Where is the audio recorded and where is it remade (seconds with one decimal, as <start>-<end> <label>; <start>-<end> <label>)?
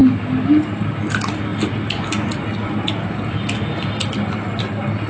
0.0-5.1 recorded